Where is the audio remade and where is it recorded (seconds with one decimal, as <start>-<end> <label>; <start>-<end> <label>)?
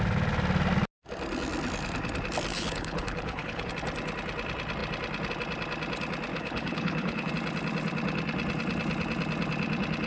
0.0-2.5 recorded; 2.5-3.7 remade; 3.7-6.3 recorded; 6.3-7.3 remade; 7.3-10.1 recorded